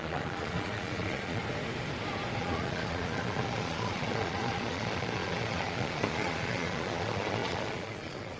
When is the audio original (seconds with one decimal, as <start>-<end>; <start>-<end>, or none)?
1.4-2.4